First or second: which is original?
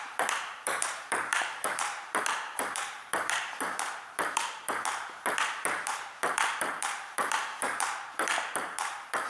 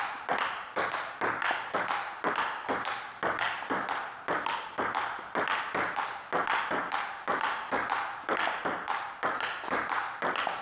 second